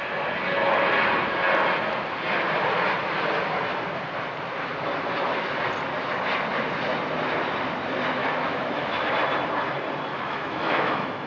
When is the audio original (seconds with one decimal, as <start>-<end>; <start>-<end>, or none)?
0.0-8.2; 9.1-10.1